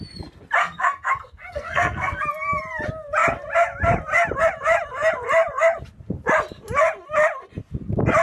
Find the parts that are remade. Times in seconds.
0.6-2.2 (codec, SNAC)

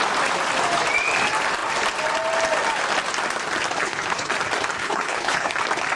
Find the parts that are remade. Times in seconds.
3.8-4.3 (codec, HILCodec); 4.8-5.5

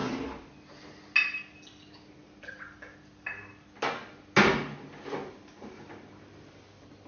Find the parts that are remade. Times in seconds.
none

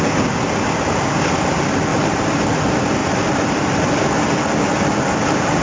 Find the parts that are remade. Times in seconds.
1.9-2.4 (vocoder, BigVGAN v2); 3.0-4.0

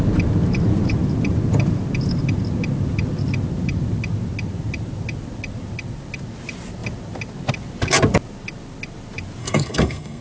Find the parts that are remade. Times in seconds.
9.4-10.2 (codec, SNAC)